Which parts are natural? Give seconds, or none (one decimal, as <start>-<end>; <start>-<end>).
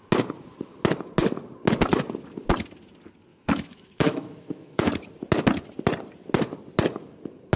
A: 0.0-3.3; 4.9-7.6